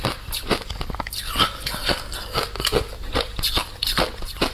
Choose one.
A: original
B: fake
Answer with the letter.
A